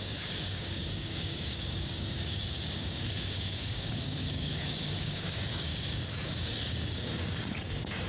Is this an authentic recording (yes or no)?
no